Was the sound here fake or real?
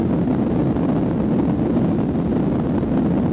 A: fake